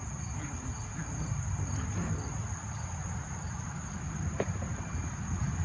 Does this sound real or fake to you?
real